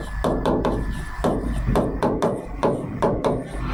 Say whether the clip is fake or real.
real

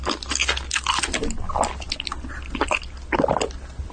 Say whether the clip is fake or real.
real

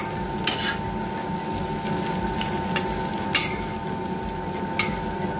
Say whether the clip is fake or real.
real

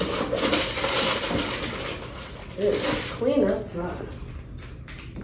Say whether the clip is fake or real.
real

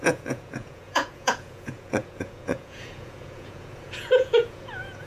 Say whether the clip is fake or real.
fake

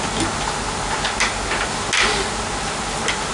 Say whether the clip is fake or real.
real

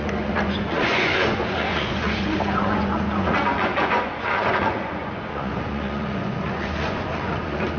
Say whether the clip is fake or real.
fake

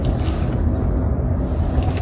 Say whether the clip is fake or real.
real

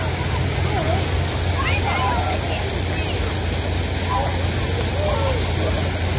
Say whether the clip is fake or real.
real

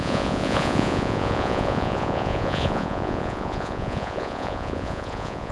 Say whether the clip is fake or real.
fake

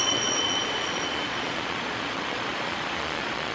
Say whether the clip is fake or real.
fake